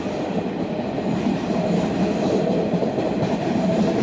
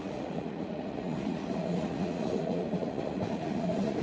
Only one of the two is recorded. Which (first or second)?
first